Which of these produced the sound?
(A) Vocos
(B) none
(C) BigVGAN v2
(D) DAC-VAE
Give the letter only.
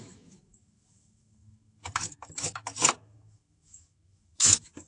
D